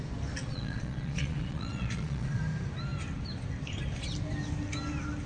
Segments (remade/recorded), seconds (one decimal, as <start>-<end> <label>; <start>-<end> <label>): 0.0-0.5 recorded; 0.5-2.4 remade; 2.4-5.3 recorded